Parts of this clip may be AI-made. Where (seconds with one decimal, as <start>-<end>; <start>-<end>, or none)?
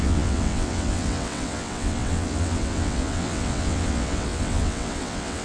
0.0-5.4